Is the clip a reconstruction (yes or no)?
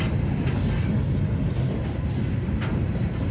no